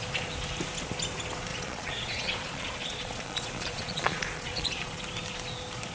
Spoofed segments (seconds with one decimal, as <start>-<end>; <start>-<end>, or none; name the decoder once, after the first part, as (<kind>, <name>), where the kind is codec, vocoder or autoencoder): 1.5-5.0 (vocoder, Vocos)